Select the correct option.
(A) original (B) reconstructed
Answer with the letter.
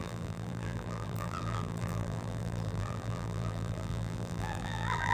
B